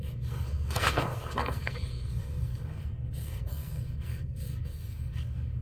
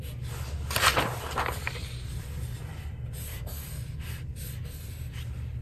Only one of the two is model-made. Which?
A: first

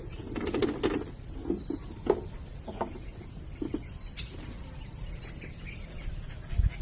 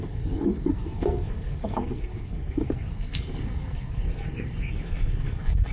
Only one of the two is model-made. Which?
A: second